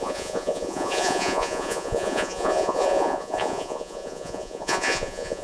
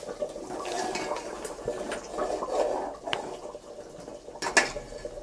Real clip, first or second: second